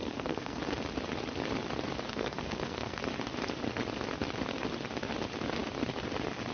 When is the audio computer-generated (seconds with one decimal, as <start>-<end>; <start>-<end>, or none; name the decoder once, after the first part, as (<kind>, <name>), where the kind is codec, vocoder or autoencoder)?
0.0-0.6 (codec, SNAC); 2.1-3.0